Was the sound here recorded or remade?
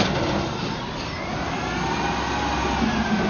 recorded